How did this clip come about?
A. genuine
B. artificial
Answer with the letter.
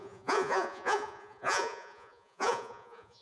B